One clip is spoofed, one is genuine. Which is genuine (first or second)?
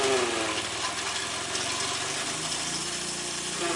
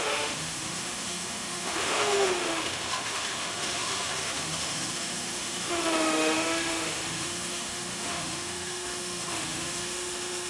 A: first